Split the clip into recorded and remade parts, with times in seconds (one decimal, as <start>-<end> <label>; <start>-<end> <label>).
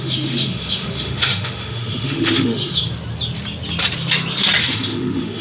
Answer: 0.0-2.8 remade; 2.8-4.6 recorded; 4.6-5.4 remade